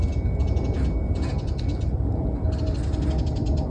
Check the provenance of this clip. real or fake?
real